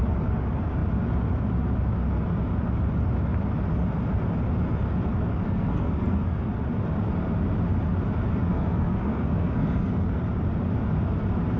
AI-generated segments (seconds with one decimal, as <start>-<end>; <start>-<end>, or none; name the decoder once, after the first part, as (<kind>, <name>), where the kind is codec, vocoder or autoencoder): 5.3-6.5 (codec, SNAC); 8.5-10.2